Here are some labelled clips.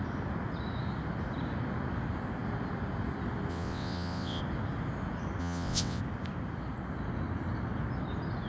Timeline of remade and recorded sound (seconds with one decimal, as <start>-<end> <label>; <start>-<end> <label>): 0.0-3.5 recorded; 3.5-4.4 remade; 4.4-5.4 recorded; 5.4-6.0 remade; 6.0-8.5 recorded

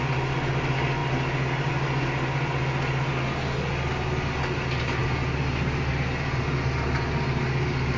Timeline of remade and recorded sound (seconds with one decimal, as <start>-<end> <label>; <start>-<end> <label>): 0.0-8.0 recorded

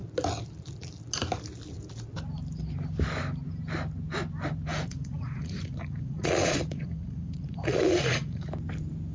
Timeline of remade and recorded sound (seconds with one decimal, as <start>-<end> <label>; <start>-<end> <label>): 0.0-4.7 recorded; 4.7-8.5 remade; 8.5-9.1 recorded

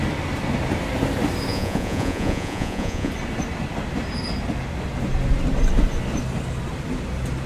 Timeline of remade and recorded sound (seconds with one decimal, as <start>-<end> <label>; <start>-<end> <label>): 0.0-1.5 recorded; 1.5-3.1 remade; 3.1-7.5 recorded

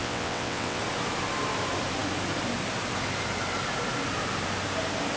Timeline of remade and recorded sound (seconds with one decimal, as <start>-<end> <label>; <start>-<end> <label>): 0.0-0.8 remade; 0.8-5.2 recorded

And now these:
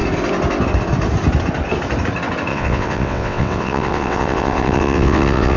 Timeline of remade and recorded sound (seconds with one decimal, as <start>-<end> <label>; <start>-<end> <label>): 0.0-2.5 recorded; 2.5-5.6 remade